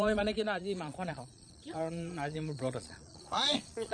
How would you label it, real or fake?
fake